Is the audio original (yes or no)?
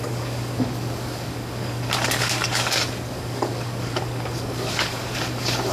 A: no